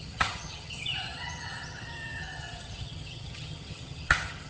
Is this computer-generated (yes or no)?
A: yes